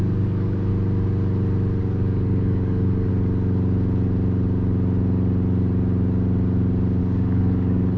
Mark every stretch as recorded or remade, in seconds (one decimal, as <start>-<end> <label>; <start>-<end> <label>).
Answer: 0.0-0.7 remade; 0.7-1.8 recorded; 1.8-3.1 remade; 3.1-7.0 recorded; 7.0-8.0 remade